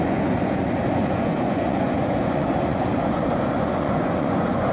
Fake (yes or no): yes